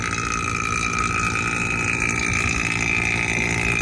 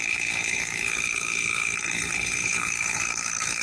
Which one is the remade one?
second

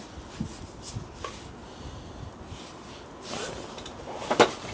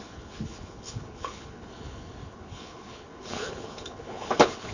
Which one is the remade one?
second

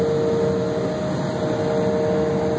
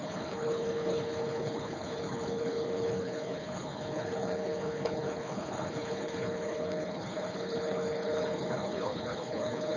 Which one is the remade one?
second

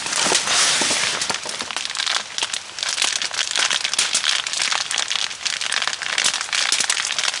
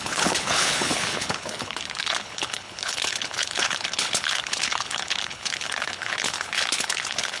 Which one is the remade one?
second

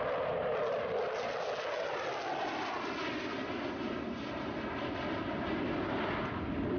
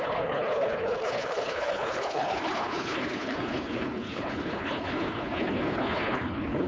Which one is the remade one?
second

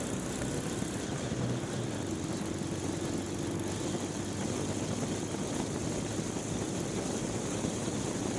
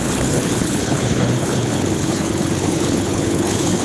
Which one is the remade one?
second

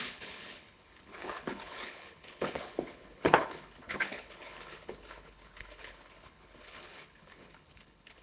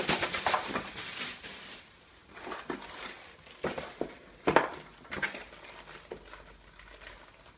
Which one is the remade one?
first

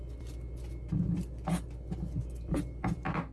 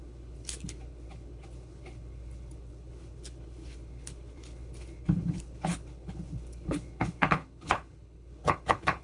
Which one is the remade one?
second